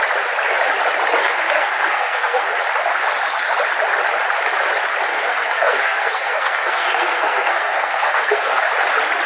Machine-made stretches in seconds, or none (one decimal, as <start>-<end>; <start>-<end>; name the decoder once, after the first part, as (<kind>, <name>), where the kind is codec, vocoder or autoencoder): 1.2-2.5 (codec, SNAC); 5.1-8.6